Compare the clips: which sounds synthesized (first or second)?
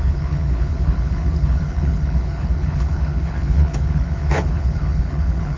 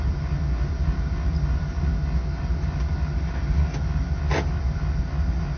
first